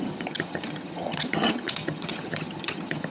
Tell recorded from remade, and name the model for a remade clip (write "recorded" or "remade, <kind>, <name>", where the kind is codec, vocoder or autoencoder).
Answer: remade, vocoder, HiFi-GAN